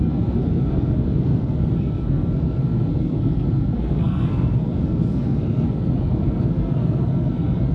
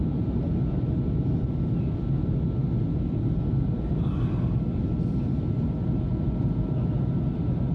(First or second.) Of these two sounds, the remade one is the first